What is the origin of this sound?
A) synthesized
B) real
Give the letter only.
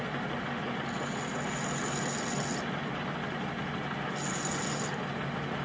B